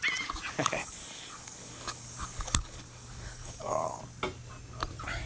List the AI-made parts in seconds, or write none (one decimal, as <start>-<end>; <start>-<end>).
0.8-4.0